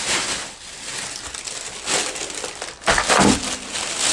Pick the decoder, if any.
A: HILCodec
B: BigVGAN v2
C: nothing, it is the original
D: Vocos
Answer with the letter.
C